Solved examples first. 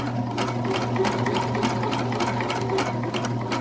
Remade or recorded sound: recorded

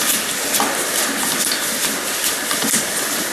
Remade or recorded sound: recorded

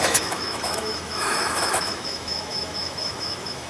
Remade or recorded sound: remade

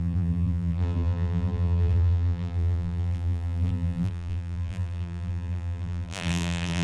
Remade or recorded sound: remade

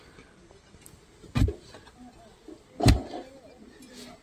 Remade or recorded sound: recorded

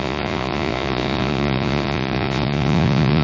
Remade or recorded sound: remade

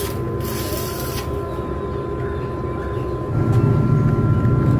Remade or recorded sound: recorded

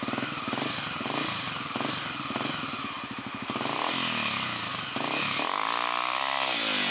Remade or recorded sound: recorded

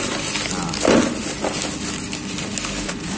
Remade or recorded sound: recorded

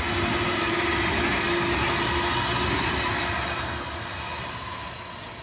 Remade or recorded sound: recorded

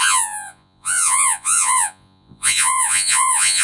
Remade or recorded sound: remade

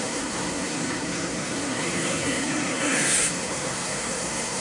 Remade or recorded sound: remade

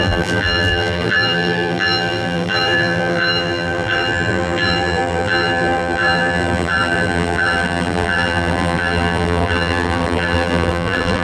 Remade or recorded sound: remade